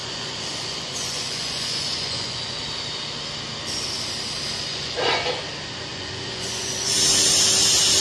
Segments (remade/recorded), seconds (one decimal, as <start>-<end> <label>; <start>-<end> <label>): 0.0-2.6 remade; 2.6-4.7 recorded; 4.7-5.4 remade; 5.4-5.9 recorded; 5.9-6.9 remade; 6.9-8.0 recorded